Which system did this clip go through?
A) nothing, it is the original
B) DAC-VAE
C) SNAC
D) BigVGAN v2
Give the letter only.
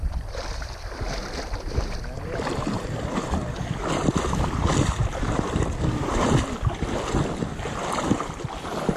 D